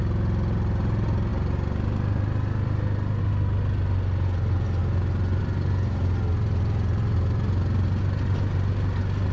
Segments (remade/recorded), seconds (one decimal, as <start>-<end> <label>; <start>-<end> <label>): 0.0-9.3 recorded